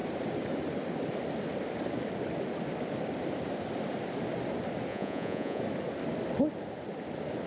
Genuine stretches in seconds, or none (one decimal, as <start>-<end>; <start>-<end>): 0.0-4.9; 5.6-7.5